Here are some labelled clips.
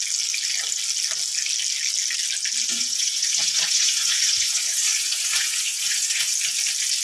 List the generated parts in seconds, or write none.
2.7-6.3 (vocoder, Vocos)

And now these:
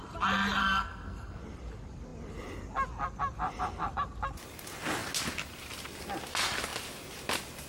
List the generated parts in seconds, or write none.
0.6-1.4 (codec, SNAC)

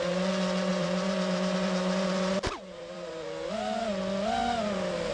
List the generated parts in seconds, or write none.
0.7-3.1 (vocoder, BigVGAN v2)

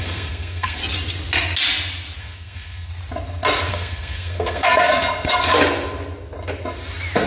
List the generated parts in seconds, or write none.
0.0-0.8 (codec, SNAC); 2.2-2.9; 3.7-5.5

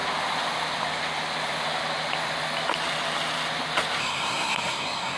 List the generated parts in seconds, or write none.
4.0-5.2 (codec, SNAC)

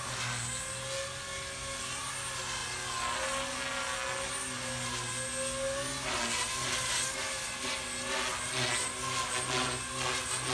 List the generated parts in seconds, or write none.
none